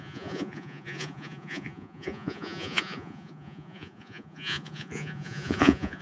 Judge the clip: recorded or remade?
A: remade